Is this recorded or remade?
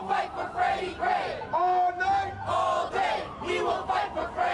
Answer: recorded